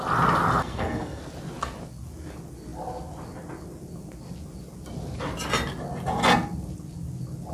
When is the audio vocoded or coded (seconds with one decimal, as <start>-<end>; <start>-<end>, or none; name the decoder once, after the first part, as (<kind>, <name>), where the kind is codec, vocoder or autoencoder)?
0.6-1.2 (codec, SNAC)